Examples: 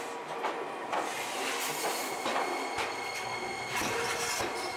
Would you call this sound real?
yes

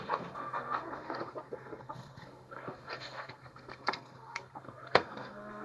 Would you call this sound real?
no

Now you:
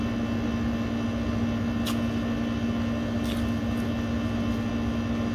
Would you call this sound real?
yes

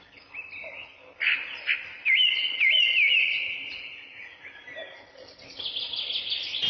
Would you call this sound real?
yes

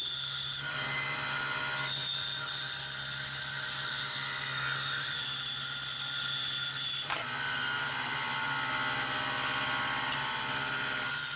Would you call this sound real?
yes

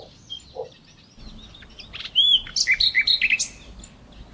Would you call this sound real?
yes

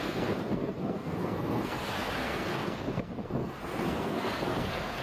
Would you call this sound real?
no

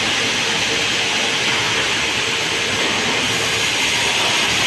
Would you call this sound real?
yes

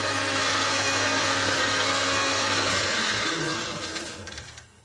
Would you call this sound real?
no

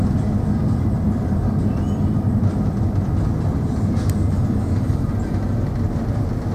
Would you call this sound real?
yes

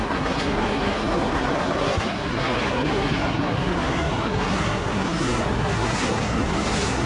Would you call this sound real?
no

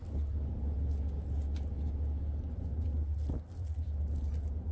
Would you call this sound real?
yes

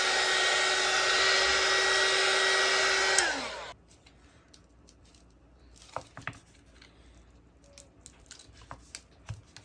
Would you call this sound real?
yes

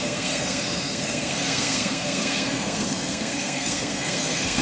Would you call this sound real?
no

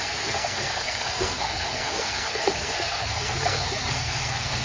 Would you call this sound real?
no